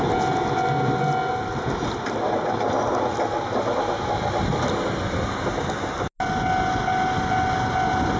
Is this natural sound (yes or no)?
yes